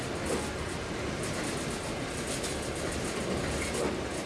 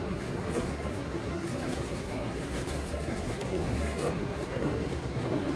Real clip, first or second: first